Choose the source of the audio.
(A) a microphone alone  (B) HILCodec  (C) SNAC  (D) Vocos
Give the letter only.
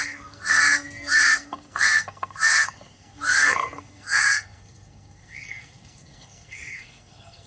C